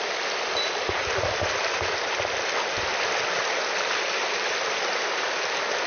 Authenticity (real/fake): real